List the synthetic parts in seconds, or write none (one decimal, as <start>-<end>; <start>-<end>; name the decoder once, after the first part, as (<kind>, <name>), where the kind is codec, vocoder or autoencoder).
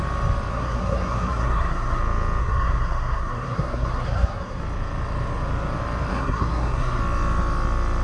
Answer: 0.5-2.0 (codec, SNAC); 2.4-4.6; 6.1-7.0